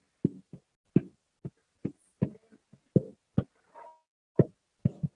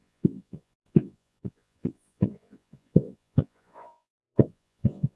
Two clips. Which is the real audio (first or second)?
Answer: first